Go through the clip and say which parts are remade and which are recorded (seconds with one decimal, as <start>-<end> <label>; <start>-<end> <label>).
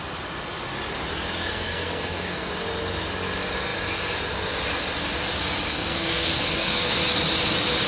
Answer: 0.0-1.5 recorded; 1.5-2.5 remade; 2.5-5.7 recorded; 5.7-7.0 remade; 7.0-7.9 recorded